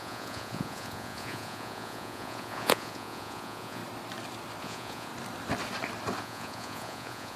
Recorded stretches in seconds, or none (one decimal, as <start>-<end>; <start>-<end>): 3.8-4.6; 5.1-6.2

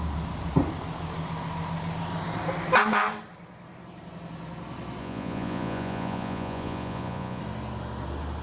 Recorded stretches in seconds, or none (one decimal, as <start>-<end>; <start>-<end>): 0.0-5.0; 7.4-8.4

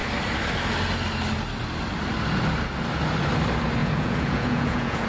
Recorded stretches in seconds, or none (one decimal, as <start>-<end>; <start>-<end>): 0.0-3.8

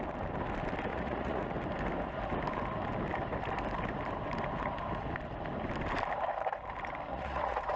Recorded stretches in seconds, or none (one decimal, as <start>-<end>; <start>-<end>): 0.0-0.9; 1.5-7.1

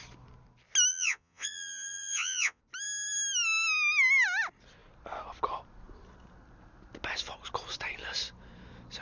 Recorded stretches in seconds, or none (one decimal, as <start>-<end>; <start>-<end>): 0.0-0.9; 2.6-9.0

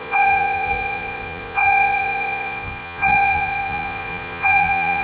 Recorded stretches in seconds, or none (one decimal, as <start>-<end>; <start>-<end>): none